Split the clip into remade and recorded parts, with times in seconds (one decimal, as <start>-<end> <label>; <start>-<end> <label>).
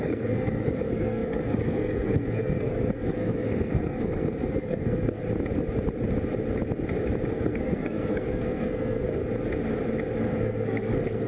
0.0-5.2 remade; 5.2-7.3 recorded; 7.3-9.2 remade; 9.2-10.2 recorded; 10.2-11.3 remade